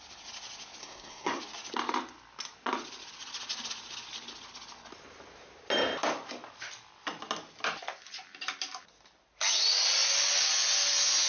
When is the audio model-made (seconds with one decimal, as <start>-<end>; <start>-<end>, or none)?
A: 0.8-1.4